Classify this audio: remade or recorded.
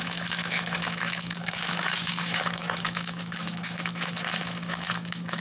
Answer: remade